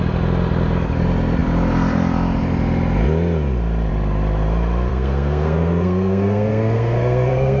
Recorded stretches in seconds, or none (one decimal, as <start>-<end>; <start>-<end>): 0.0-4.9